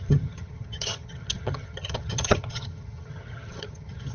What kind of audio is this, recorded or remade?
remade